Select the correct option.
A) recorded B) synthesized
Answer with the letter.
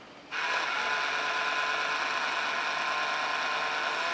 A